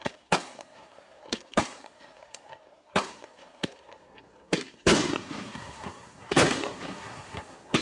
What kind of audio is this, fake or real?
fake